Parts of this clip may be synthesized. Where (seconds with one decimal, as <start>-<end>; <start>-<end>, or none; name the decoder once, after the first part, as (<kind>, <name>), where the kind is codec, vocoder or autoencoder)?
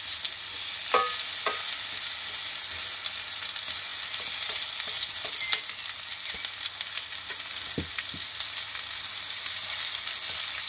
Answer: none